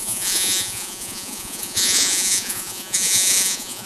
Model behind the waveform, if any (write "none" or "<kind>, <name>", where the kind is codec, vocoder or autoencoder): vocoder, Vocos